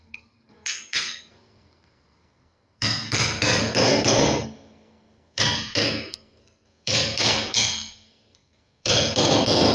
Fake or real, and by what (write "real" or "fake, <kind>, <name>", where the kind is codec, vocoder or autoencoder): fake, codec, SNAC